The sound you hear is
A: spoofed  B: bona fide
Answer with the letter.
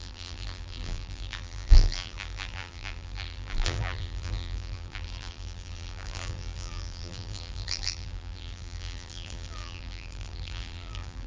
A